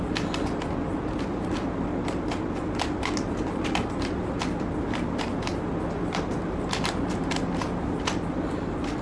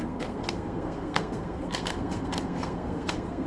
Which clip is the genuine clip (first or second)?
first